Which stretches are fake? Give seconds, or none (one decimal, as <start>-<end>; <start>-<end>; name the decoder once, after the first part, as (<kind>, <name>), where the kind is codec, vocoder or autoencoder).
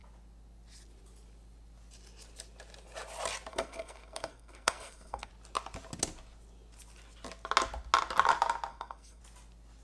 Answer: 3.5-5.3 (codec, SNAC); 8.7-9.2